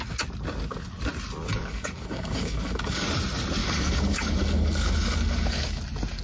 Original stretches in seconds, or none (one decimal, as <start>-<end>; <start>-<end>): 0.0-1.5; 3.1-3.6; 5.8-6.2